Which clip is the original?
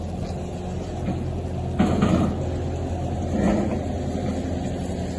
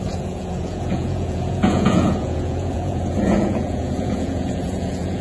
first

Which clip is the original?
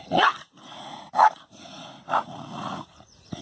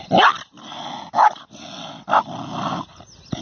second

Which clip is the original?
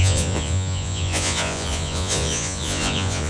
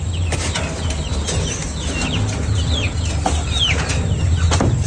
second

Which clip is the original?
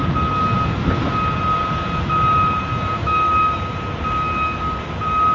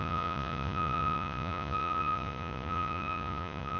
first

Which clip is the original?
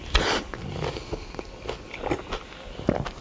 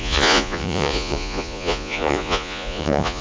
first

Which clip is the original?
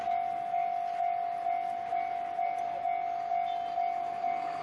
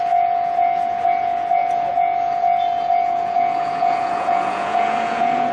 first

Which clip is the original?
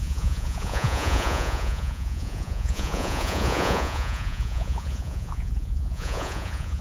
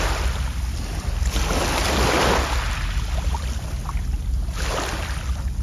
second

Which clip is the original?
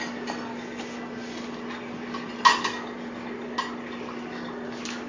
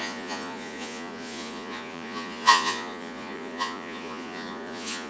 first